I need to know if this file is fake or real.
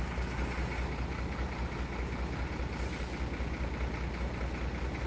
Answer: real